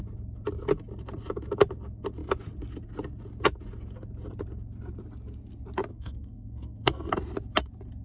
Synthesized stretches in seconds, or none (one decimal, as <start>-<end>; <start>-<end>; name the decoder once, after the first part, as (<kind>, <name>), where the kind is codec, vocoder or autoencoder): 5.9-7.1 (codec, SNAC)